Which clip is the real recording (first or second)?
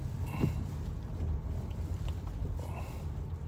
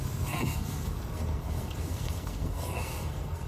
first